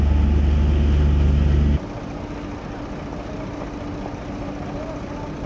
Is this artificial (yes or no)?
no